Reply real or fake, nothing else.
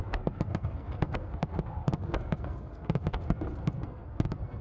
fake